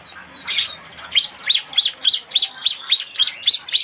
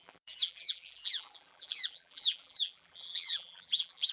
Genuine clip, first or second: first